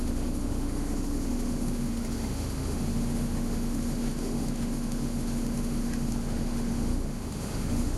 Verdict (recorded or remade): remade